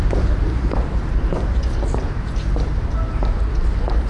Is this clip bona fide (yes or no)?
yes